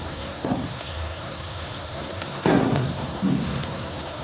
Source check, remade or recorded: remade